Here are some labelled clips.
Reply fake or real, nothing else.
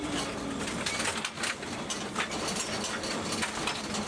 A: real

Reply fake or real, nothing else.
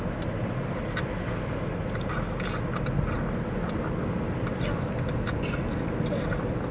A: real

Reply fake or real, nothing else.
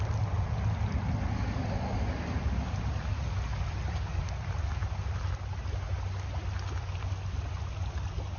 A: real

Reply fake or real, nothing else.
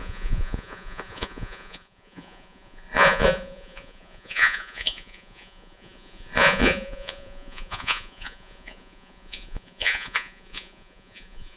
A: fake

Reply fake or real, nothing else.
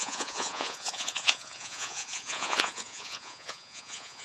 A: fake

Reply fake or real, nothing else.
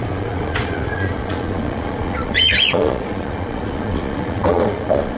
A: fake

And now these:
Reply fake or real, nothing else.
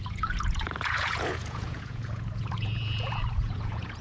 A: fake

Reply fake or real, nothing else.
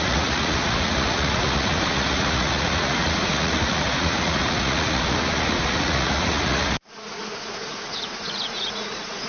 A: fake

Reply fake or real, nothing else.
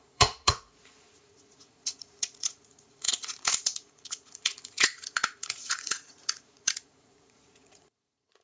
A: fake